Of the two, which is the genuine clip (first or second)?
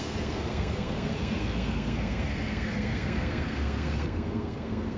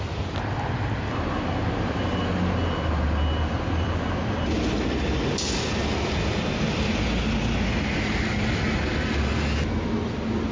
second